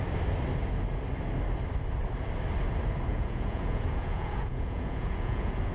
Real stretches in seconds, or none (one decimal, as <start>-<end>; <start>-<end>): 0.0-3.1